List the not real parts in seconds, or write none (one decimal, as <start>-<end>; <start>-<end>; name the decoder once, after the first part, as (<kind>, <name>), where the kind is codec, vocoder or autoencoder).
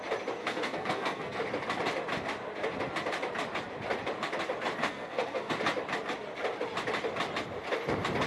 0.4-1.4 (codec, SNAC); 4.8-5.5